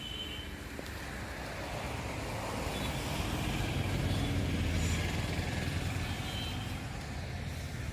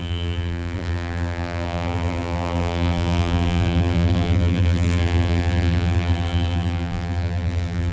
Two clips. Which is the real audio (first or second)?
first